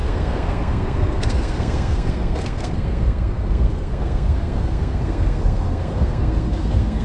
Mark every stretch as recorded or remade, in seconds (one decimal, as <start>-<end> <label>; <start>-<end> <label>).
0.0-7.0 remade